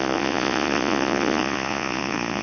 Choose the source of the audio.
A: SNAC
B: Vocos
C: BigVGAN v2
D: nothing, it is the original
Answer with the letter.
B